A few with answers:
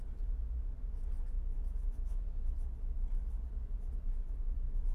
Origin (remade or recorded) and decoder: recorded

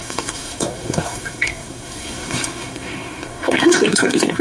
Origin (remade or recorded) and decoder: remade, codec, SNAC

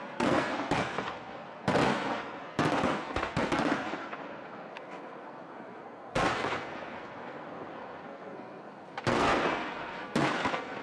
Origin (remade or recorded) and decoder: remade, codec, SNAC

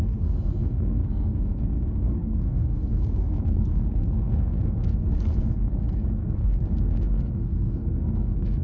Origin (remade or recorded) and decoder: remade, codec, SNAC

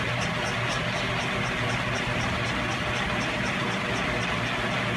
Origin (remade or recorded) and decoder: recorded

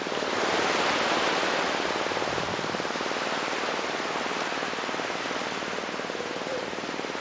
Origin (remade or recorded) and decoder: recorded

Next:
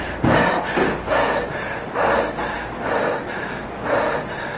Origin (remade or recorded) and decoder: recorded